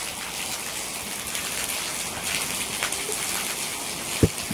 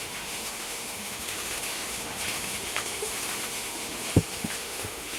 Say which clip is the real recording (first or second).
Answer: first